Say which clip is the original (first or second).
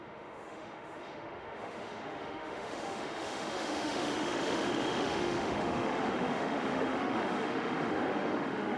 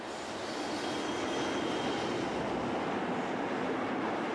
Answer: second